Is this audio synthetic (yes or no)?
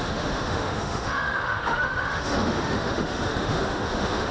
yes